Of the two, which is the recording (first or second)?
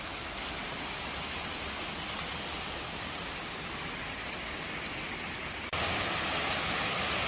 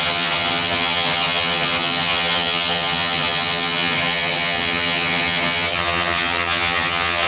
first